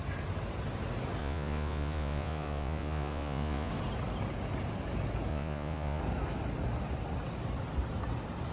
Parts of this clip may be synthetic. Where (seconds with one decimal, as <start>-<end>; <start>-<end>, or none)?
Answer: 1.2-3.7; 5.3-6.0